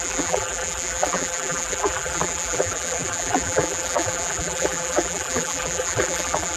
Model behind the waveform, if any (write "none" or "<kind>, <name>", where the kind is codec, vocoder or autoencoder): vocoder, BigVGAN v2